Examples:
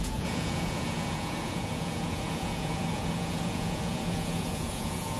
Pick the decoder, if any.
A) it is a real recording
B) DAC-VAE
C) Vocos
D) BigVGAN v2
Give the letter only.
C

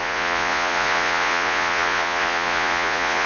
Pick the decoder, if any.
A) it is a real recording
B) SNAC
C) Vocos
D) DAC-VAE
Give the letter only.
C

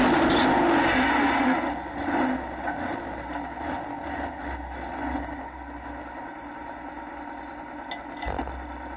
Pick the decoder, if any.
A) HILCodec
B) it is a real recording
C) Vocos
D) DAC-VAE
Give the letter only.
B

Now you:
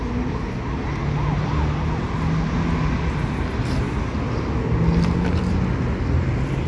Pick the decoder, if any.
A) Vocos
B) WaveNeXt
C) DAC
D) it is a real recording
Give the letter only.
D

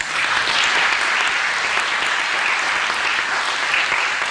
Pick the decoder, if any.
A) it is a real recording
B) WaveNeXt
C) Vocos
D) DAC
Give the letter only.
A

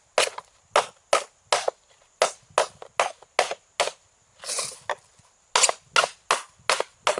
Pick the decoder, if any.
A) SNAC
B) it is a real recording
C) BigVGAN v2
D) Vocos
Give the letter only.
B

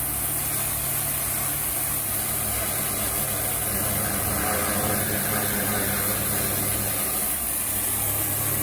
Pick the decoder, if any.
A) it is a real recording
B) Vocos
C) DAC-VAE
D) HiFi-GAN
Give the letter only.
A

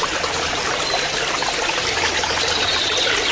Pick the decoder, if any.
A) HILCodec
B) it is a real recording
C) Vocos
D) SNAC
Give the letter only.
B